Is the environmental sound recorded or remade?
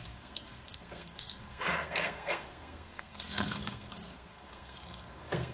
remade